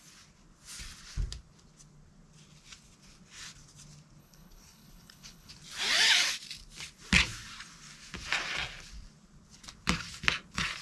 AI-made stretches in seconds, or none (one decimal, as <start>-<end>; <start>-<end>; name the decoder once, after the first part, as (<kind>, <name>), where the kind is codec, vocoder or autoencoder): 4.2-5.5 (codec, HILCodec)